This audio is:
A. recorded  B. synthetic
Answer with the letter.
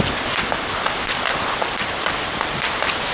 A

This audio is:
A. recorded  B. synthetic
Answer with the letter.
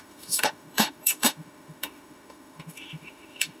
B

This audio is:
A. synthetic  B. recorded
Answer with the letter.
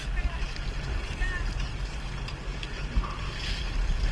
B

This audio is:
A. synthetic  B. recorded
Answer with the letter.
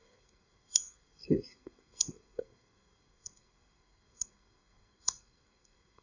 A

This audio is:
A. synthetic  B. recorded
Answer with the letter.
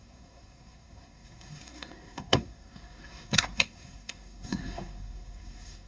A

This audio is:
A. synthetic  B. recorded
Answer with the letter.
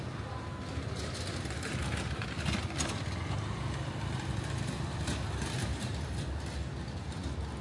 B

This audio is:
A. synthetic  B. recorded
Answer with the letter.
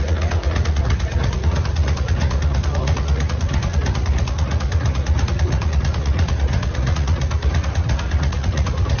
A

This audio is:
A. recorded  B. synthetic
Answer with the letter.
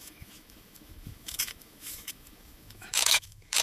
B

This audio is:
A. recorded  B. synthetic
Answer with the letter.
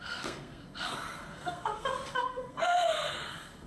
B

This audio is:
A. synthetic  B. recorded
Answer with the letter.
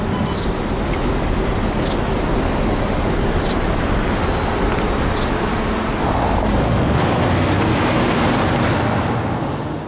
B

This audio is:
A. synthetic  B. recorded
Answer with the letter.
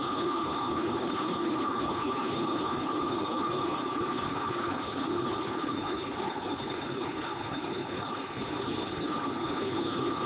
A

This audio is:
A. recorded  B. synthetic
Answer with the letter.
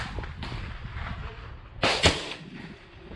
A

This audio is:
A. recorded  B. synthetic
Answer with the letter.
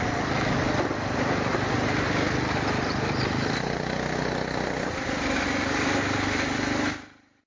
A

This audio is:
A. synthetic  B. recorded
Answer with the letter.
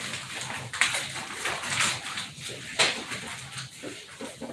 B